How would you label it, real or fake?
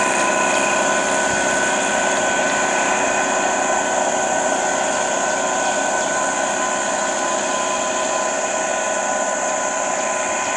real